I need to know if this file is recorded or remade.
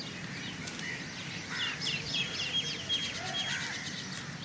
recorded